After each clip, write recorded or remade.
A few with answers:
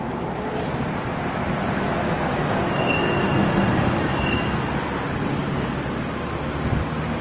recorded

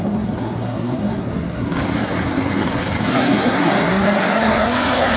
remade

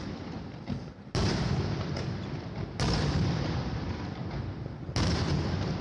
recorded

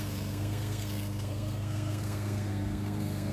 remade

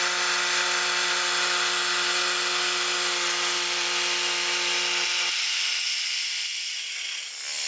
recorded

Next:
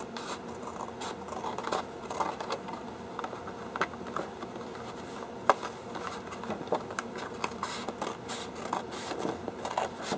recorded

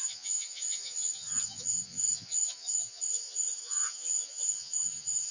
remade